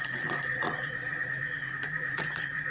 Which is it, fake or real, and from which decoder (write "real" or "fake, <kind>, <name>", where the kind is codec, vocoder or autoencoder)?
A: fake, vocoder, Vocos